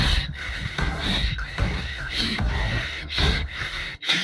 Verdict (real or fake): fake